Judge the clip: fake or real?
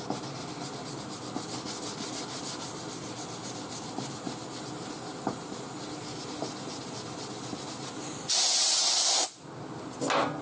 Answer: real